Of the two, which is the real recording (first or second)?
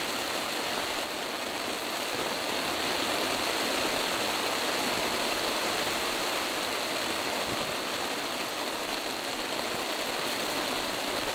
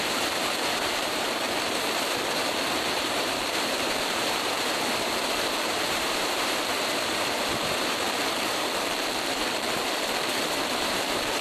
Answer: first